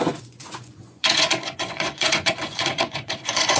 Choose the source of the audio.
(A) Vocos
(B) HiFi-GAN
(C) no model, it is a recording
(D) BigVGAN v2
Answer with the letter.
A